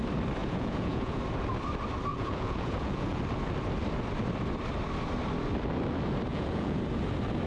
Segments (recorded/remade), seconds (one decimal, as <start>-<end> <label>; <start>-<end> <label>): 0.0-0.4 recorded; 0.4-1.2 remade; 1.2-2.1 recorded; 2.1-3.2 remade; 3.2-6.3 recorded; 6.3-6.8 remade; 6.8-7.5 recorded